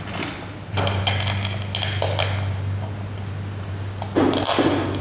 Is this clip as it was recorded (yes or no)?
yes